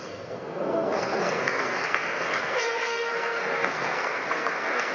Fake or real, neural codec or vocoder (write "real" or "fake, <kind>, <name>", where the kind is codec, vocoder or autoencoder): fake, codec, SNAC